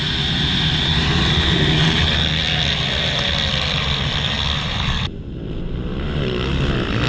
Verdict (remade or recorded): recorded